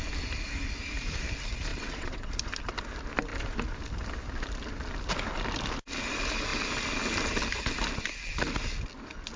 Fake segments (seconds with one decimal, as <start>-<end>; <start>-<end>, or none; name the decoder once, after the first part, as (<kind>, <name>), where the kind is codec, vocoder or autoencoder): 1.7-2.3 (vocoder, WaveNeXt)